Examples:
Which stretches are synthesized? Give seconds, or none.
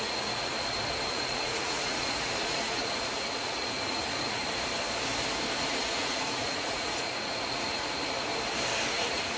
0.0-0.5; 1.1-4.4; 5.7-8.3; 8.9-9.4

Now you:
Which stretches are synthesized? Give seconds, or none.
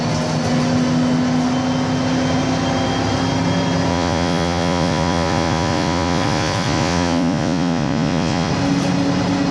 3.9-8.5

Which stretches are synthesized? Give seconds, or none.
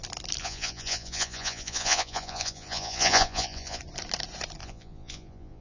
0.4-3.8; 4.6-5.6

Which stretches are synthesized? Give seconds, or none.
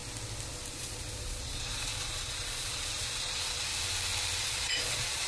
0.7-3.7; 4.4-5.3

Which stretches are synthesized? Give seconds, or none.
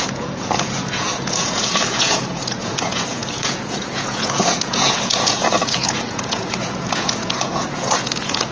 0.0-8.5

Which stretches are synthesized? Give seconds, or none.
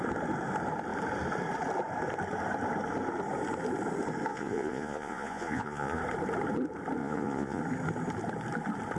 4.3-6.0; 7.0-7.6